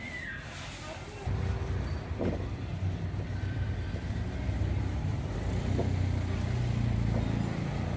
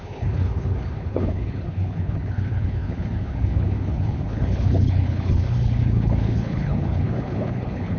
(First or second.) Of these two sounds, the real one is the first